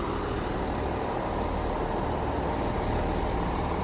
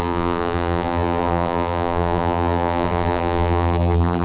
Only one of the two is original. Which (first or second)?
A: first